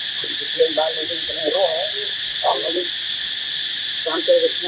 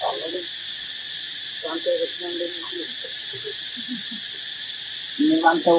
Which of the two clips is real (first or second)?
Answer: second